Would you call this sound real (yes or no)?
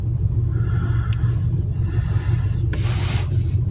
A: yes